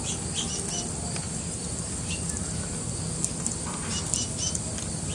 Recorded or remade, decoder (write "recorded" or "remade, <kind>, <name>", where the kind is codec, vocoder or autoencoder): recorded